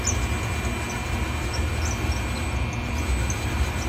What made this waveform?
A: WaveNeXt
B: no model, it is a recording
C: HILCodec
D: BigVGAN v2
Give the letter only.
B